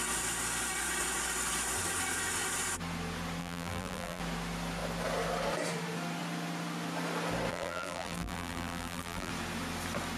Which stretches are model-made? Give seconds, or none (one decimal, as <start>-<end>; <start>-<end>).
3.4-4.2; 7.5-9.3